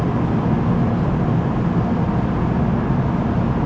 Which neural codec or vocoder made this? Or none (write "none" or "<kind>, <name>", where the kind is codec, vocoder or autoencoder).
none